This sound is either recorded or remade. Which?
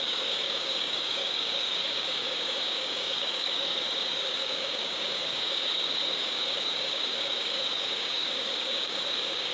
remade